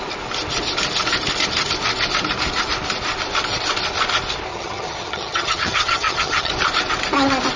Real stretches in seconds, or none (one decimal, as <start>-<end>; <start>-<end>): 0.0-4.5; 6.5-7.6